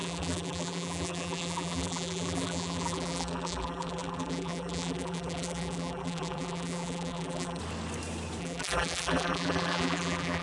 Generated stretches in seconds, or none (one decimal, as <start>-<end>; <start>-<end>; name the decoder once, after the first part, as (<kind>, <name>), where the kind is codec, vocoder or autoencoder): 0.0-7.6 (vocoder, BigVGAN v2); 8.4-10.4